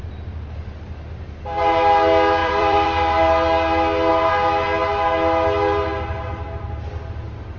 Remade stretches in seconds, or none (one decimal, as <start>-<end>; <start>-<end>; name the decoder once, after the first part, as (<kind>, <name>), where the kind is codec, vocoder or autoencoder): 2.4-3.0 (vocoder, BigVGAN v2)